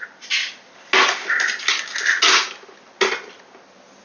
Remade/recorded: recorded